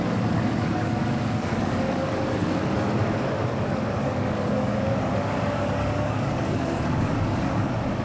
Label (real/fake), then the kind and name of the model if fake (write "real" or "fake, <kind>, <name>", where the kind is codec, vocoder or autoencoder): fake, codec, DAC